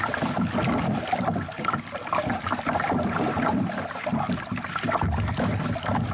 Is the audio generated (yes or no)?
no